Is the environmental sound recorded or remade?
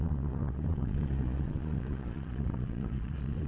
remade